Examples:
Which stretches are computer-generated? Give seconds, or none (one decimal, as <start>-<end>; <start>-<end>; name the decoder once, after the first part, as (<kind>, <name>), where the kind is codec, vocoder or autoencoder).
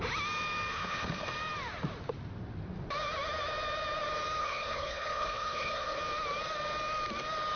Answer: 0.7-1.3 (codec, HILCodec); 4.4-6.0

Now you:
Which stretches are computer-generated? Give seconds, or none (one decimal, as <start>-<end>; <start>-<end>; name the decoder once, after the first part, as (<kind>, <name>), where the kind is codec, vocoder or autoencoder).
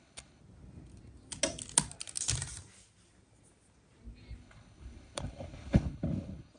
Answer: 0.0-0.4 (codec, HILCodec); 4.4-6.6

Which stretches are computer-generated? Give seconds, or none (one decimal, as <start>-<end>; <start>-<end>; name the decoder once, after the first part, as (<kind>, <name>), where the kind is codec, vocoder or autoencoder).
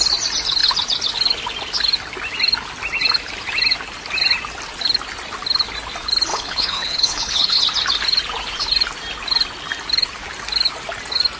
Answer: 6.3-7.6 (codec, HILCodec)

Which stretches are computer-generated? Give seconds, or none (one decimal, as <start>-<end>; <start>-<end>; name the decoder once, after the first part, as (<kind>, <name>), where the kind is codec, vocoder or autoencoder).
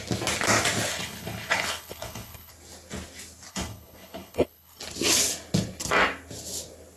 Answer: 0.9-2.5 (codec, HILCodec); 3.5-4.8